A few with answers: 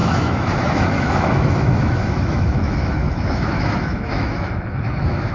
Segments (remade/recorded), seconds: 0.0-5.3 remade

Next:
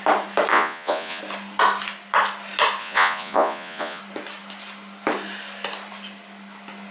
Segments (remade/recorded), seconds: 0.0-0.5 recorded; 0.5-1.2 remade; 1.2-2.8 recorded; 2.8-4.0 remade; 4.0-6.9 recorded

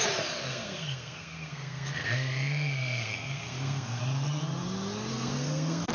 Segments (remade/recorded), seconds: 0.0-0.5 recorded; 0.5-4.0 remade; 4.0-5.1 recorded; 5.1-5.9 remade

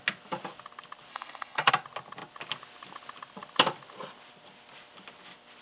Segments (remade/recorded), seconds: 0.0-1.1 recorded; 1.1-1.7 remade; 1.7-5.6 recorded